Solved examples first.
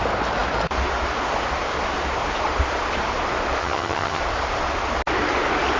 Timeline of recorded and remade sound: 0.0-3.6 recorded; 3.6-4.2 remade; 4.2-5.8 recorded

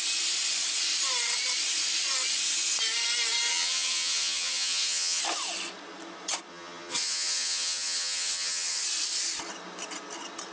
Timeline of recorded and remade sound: 0.0-3.5 recorded; 3.5-5.2 remade; 5.2-6.5 recorded; 6.5-8.8 remade; 8.8-10.5 recorded

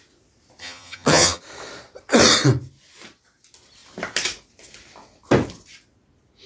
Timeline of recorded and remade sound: 0.0-0.6 recorded; 0.6-1.4 remade; 1.4-6.5 recorded

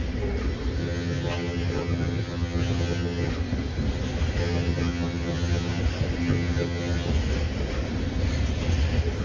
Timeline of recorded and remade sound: 0.0-0.8 recorded; 0.8-3.3 remade; 3.3-4.4 recorded; 4.4-5.8 remade; 5.8-6.2 recorded; 6.2-7.1 remade; 7.1-9.2 recorded

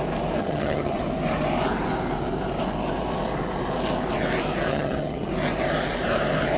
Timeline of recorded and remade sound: 0.0-0.4 recorded; 0.4-1.0 remade; 1.0-4.7 recorded; 4.7-5.3 remade; 5.3-6.6 recorded

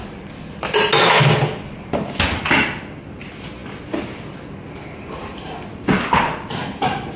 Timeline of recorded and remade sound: 0.0-7.2 recorded